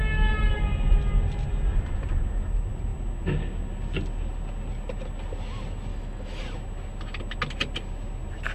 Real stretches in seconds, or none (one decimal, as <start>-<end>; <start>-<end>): 0.0-5.9; 6.4-8.5